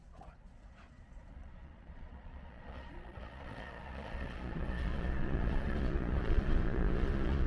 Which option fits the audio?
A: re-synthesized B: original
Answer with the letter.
A